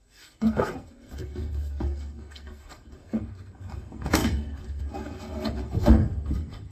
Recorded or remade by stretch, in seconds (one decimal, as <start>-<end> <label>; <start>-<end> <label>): 0.0-6.7 remade